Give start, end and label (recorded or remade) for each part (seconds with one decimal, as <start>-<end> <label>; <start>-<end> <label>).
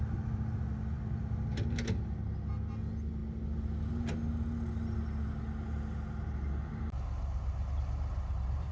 0.0-8.7 recorded